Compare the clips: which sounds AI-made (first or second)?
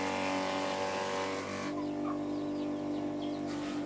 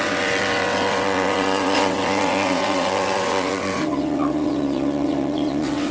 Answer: second